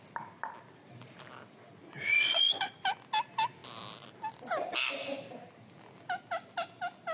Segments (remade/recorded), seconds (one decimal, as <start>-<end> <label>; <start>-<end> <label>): 0.0-1.8 recorded; 1.8-2.7 remade; 2.7-7.1 recorded